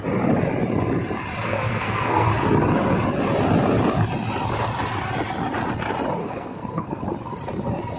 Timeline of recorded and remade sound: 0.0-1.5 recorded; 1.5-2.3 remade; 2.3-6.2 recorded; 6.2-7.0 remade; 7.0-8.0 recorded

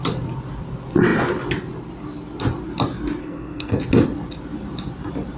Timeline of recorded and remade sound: 0.0-3.2 recorded; 3.2-3.8 remade; 3.8-5.4 recorded

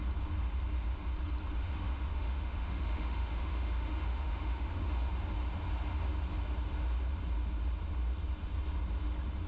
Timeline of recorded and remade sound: 0.0-1.6 recorded; 1.6-5.1 remade; 5.1-9.5 recorded

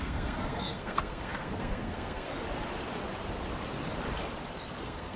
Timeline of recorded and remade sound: 0.0-2.3 remade; 2.3-4.8 recorded; 4.8-5.2 remade

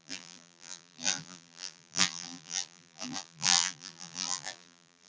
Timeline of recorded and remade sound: 0.0-5.1 remade

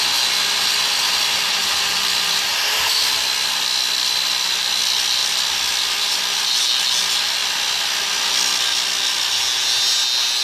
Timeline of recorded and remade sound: 0.0-1.6 recorded; 1.6-4.6 remade; 4.6-5.2 recorded; 5.2-6.6 remade; 6.6-10.4 recorded

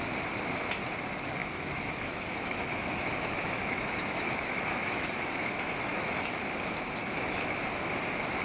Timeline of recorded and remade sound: 0.0-1.4 recorded; 1.4-6.3 remade; 6.3-7.0 recorded; 7.0-7.8 remade; 7.8-8.4 recorded